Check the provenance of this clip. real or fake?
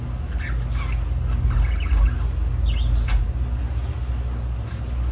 real